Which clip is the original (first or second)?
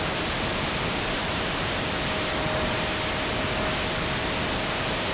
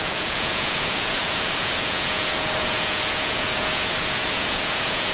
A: first